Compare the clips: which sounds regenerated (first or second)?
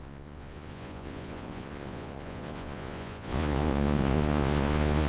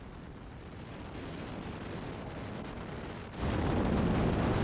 first